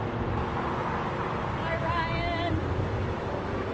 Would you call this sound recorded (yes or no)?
yes